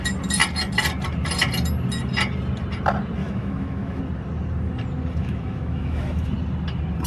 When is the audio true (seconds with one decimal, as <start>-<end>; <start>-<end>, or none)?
0.0-3.2; 4.0-5.2; 6.3-7.1